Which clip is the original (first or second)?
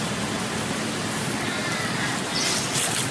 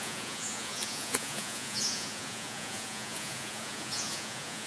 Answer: first